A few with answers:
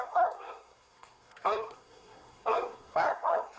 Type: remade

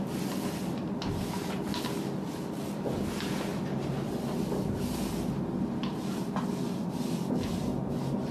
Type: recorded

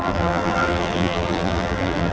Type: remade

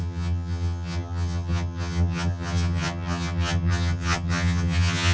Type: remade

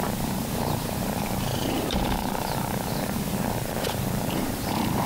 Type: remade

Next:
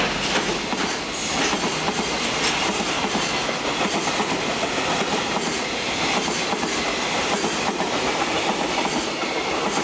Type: recorded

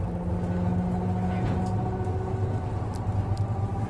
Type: recorded